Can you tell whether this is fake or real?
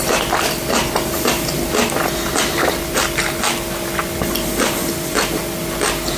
real